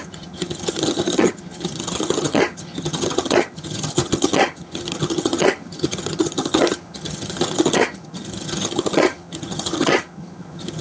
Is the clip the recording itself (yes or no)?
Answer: no